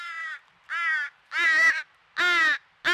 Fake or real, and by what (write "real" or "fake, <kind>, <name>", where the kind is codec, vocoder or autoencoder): real